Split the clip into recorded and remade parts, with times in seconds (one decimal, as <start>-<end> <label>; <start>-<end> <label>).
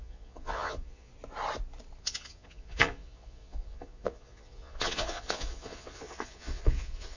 0.0-1.1 remade; 1.1-2.0 recorded; 2.0-7.2 remade